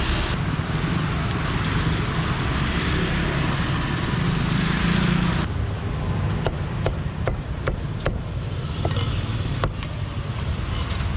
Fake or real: real